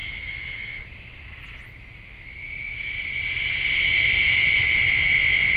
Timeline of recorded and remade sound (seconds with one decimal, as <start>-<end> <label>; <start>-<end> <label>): 0.0-5.6 recorded